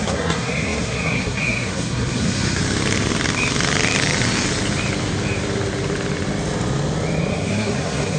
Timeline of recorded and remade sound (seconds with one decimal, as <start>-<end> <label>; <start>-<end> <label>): 0.0-2.6 remade; 2.6-7.3 recorded; 7.3-8.2 remade